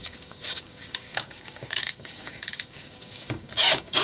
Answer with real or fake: fake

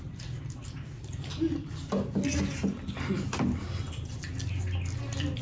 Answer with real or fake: real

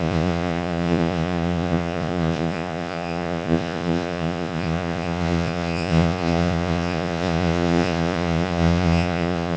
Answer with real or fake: fake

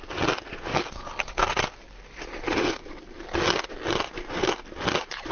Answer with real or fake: real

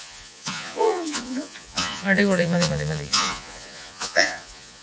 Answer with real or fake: fake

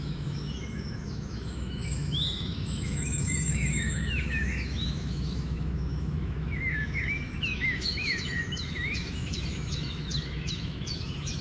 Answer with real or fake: fake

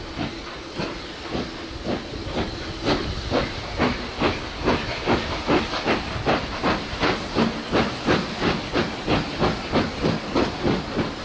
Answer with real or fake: real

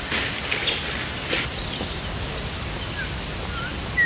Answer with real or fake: real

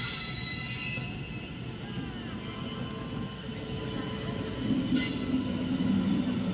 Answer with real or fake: real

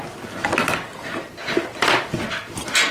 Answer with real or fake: real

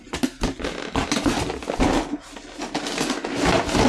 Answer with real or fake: real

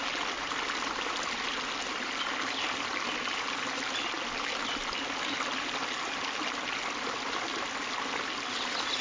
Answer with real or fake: real